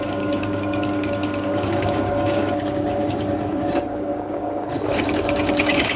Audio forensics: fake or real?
fake